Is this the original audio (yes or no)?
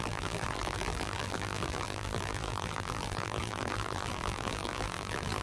no